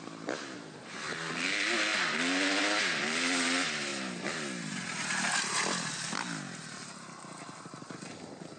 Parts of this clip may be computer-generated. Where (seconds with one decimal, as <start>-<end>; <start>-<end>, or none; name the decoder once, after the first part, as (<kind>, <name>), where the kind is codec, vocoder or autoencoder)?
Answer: none